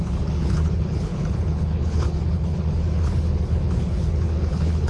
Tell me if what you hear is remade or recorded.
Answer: remade